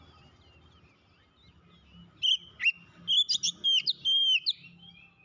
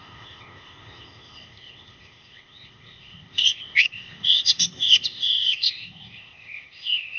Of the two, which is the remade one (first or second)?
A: second